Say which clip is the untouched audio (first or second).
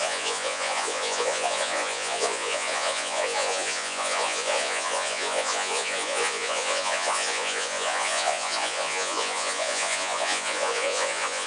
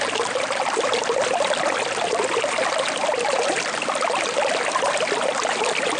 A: second